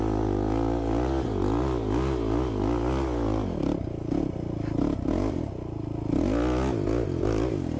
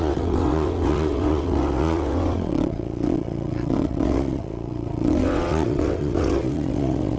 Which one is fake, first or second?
second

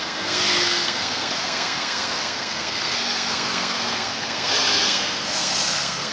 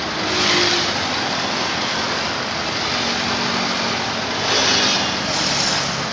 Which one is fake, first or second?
first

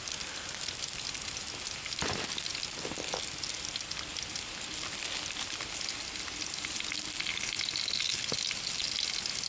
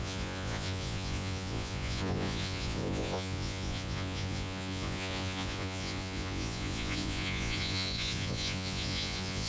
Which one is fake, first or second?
second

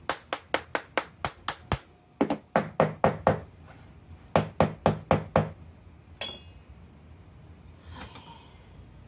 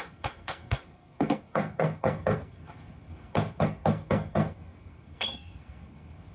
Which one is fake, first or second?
second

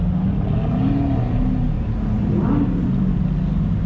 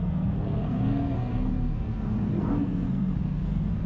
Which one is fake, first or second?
second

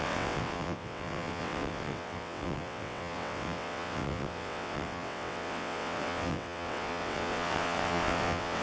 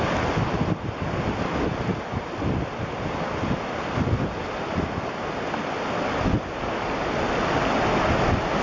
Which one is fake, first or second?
first